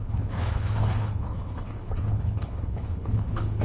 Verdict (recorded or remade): remade